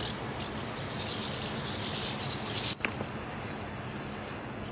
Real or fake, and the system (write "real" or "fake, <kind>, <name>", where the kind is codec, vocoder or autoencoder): real